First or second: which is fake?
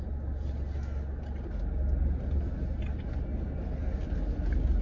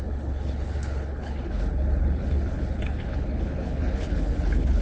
second